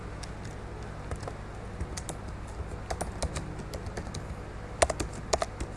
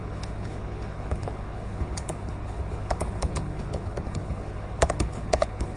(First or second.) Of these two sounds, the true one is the first